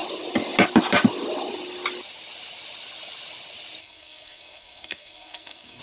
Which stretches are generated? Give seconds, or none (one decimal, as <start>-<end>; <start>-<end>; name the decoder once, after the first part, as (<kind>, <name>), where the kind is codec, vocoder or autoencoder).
3.8-5.8 (codec, SNAC)